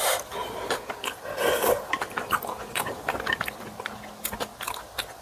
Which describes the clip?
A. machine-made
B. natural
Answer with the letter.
B